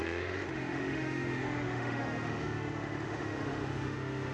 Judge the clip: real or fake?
fake